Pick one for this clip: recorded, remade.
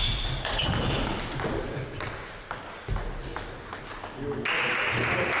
recorded